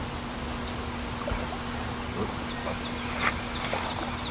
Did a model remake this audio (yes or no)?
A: no